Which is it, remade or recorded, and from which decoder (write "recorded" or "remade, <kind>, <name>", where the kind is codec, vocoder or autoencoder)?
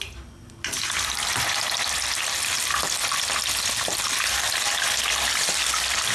recorded